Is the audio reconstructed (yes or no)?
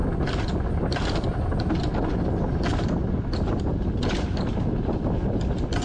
no